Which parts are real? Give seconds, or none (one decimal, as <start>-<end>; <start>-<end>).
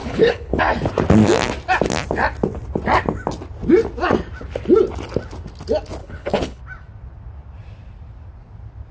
0.6-6.0; 6.6-8.9